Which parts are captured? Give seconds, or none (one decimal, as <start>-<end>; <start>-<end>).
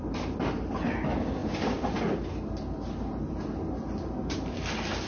0.0-5.1